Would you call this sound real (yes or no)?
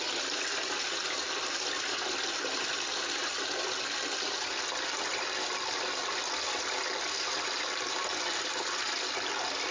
yes